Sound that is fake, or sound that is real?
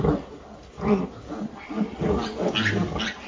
real